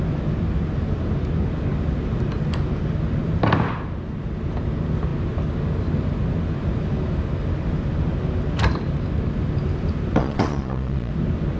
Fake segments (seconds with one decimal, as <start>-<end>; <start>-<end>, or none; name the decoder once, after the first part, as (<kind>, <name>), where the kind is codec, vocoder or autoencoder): 10.2-11.1 (vocoder, Vocos)

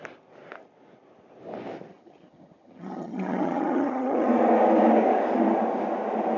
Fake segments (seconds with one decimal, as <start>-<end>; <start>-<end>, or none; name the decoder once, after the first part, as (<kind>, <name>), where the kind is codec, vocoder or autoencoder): 1.9-4.3 (vocoder, HiFi-GAN)

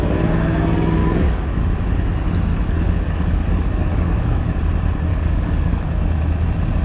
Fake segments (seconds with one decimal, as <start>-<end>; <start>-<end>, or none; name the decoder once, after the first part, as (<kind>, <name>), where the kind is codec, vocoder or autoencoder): 1.0-1.7 (codec, DAC); 2.5-4.5; 5.1-5.8

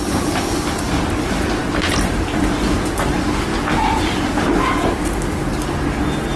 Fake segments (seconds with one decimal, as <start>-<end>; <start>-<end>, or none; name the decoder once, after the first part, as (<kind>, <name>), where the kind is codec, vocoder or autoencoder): none

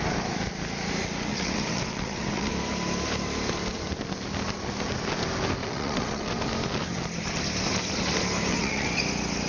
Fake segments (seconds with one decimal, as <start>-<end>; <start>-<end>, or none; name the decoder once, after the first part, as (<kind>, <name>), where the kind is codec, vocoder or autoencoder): 1.3-2.5 (vocoder, WaveNeXt); 5.6-6.4; 8.5-9.0